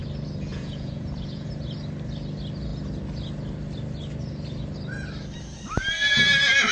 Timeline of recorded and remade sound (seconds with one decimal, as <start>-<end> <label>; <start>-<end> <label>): 0.0-0.5 recorded; 0.5-1.5 remade; 1.5-6.7 recorded